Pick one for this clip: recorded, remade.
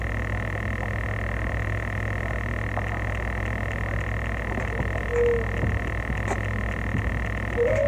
recorded